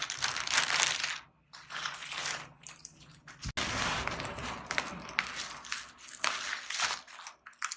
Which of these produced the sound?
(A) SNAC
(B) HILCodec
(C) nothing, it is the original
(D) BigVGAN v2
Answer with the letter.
C